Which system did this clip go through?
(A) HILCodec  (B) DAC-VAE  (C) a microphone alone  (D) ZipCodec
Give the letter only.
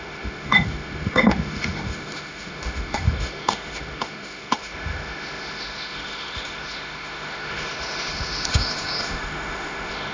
B